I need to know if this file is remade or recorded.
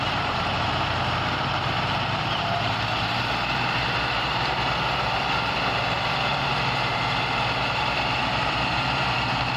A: remade